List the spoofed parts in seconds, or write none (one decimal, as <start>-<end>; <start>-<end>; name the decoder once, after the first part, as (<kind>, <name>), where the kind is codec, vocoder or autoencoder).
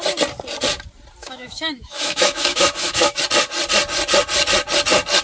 1.2-3.2 (autoencoder, DAC-VAE)